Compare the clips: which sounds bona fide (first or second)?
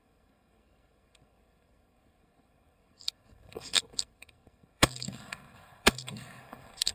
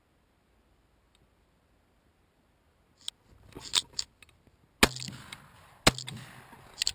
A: second